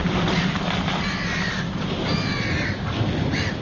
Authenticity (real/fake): real